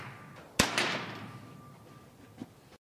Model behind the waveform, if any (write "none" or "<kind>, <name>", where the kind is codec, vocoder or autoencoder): none